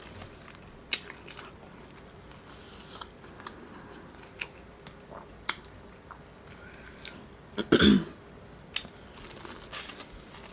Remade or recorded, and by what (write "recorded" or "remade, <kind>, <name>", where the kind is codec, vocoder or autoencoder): recorded